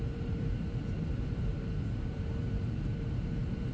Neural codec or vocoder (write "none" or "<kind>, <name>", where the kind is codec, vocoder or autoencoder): vocoder, BigVGAN v2